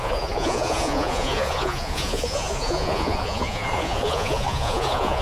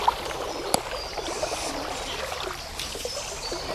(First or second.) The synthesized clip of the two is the first